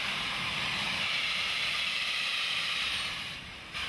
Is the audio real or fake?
fake